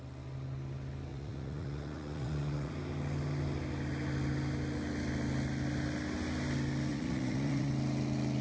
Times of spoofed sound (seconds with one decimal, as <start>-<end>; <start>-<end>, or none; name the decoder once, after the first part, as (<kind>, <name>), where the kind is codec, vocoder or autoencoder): 1.1-2.7 (vocoder, Vocos); 6.9-7.7